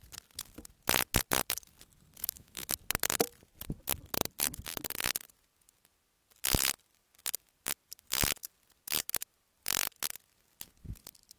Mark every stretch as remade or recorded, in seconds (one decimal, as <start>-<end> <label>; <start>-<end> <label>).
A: 0.0-2.2 recorded; 2.2-2.7 remade; 2.7-11.4 recorded